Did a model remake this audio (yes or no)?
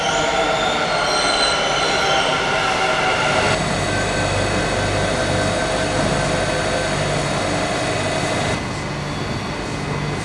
no